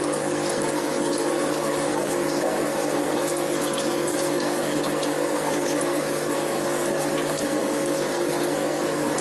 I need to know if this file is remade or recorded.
remade